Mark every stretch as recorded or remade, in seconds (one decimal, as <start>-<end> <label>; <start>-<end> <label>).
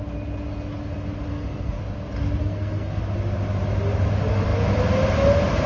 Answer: 0.0-1.3 recorded; 1.3-1.8 remade; 1.8-2.4 recorded; 2.4-3.0 remade; 3.0-5.7 recorded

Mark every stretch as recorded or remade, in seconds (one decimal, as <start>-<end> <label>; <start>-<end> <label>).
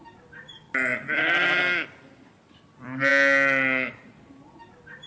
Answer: 0.0-5.1 recorded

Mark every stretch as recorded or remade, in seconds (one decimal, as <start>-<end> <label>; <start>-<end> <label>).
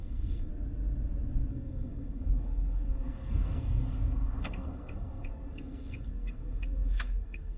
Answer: 0.0-0.5 remade; 0.5-1.5 recorded; 1.5-7.6 remade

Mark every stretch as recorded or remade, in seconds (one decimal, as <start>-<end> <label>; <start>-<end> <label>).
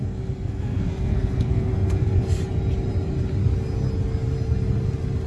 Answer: 0.0-2.4 remade; 2.4-5.3 recorded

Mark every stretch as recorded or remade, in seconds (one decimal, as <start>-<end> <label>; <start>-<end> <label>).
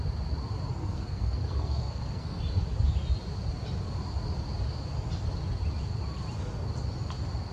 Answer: 0.0-0.8 recorded; 0.8-2.4 remade; 2.4-7.5 recorded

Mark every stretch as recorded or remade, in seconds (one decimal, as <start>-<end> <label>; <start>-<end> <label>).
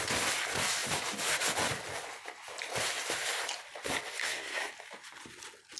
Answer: 0.0-4.2 recorded; 4.2-4.7 remade; 4.7-5.8 recorded